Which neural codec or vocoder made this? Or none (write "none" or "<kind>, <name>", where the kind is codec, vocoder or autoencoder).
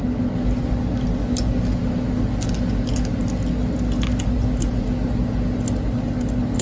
none